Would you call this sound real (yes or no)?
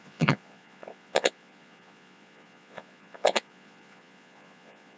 no